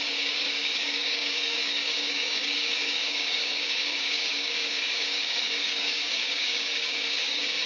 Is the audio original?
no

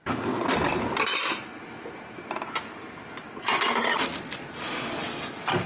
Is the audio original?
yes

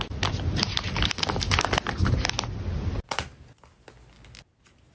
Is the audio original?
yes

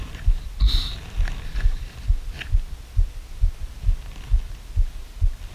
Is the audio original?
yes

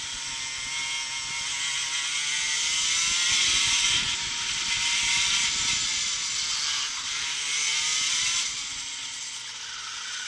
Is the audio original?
yes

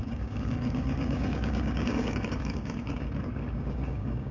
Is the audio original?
no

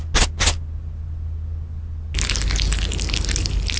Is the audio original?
yes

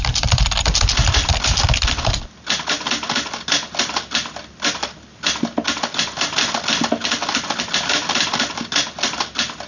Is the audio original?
yes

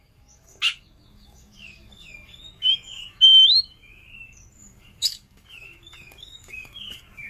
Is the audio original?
no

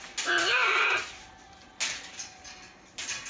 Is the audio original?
yes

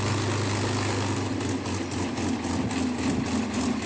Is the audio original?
yes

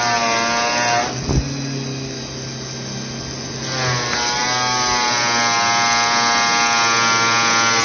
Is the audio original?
yes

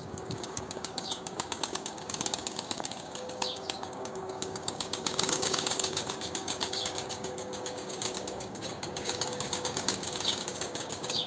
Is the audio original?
no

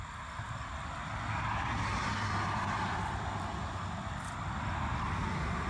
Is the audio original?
yes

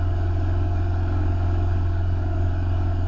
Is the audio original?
no